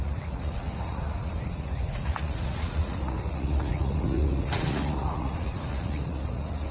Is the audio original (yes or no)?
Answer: no